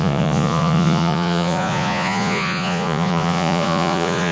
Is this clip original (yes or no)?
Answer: no